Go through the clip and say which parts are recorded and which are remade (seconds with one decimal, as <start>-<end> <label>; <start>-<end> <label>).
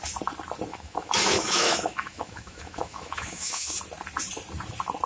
0.0-0.7 recorded; 0.7-3.8 remade; 3.8-5.1 recorded